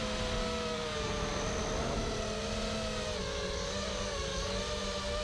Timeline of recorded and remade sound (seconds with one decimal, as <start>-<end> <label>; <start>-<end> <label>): 0.0-0.4 recorded; 0.4-1.1 remade; 1.1-3.2 recorded; 3.2-4.6 remade; 4.6-5.2 recorded